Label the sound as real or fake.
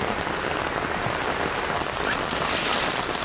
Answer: real